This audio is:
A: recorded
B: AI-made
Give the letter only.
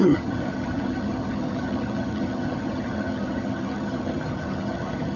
B